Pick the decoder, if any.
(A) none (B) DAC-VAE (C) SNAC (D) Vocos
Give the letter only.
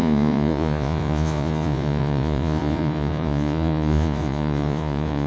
D